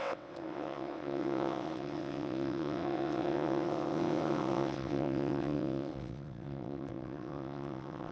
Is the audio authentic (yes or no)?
no